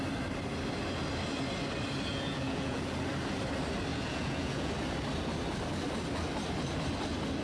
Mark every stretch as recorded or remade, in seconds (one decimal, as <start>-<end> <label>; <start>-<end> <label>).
0.0-2.1 recorded; 2.1-2.9 remade; 2.9-3.9 recorded; 3.9-4.7 remade; 4.7-7.4 recorded